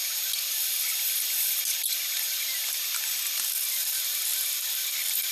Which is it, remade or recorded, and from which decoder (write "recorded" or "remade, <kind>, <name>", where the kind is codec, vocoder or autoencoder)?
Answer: recorded